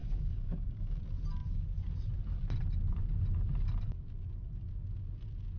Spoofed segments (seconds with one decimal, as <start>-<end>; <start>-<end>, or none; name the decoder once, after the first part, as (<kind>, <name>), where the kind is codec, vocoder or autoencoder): 0.0-1.0 (codec, DAC)